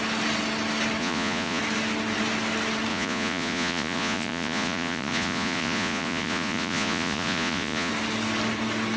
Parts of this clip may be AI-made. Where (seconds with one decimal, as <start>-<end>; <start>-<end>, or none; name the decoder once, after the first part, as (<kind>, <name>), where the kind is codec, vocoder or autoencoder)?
1.0-1.6 (vocoder, Vocos); 2.9-7.9